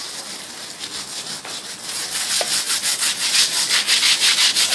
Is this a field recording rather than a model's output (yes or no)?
yes